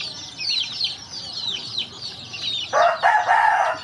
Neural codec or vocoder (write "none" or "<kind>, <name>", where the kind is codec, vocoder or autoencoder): none